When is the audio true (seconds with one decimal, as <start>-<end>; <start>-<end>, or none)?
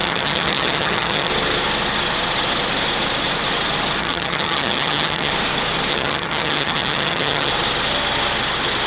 1.3-4.0; 5.3-5.9; 7.5-8.9